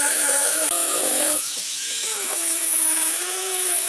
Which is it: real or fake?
fake